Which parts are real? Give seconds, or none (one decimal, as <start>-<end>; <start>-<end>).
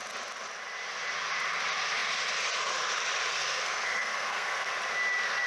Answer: 0.0-3.3; 4.7-5.5